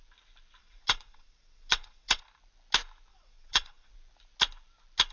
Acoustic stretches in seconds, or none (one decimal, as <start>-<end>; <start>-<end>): 0.0-0.6; 2.2-3.1; 3.9-5.1

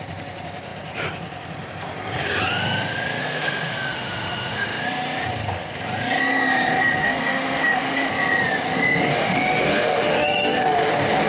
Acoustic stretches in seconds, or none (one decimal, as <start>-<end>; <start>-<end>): 0.0-3.2; 4.8-7.0; 8.1-9.1; 10.9-11.3